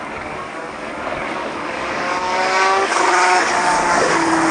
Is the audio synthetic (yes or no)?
yes